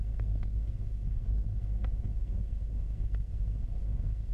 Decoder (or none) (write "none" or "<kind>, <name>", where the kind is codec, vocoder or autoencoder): codec, SNAC